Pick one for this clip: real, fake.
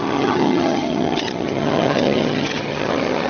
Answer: fake